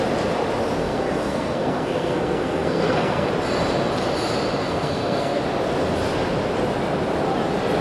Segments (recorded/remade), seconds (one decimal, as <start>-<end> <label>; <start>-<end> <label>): 0.0-0.8 recorded; 0.8-3.3 remade; 3.3-4.6 recorded; 4.6-5.4 remade; 5.4-7.8 recorded